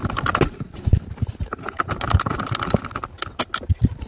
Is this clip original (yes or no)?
yes